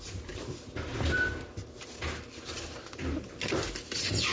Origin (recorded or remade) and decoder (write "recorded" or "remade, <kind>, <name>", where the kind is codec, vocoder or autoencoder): recorded